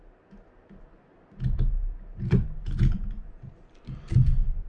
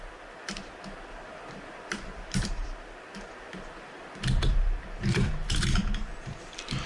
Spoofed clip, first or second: second